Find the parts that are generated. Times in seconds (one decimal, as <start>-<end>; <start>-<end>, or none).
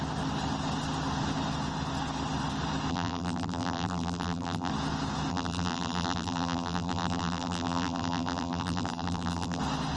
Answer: 2.9-4.7; 5.3-9.6